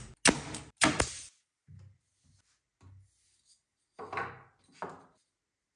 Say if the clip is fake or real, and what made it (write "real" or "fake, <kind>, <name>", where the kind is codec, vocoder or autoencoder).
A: real